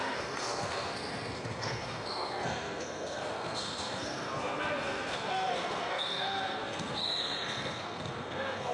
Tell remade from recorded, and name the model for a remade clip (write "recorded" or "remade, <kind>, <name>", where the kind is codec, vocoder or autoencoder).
remade, codec, SNAC